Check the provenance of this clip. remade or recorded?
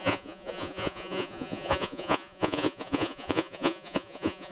remade